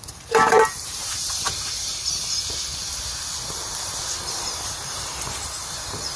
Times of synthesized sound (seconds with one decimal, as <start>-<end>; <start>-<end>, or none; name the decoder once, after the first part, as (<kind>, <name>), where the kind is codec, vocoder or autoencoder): 0.0-1.9 (vocoder, BigVGAN v2); 4.3-6.2